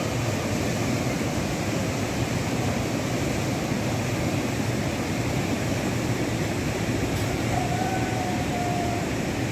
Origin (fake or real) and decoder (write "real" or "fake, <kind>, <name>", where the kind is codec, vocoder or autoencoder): fake, vocoder, BigVGAN v2